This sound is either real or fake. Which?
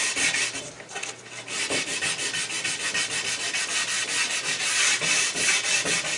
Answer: real